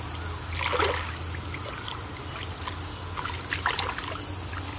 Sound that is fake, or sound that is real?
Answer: real